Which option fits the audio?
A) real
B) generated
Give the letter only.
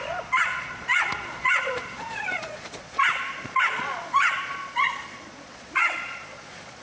B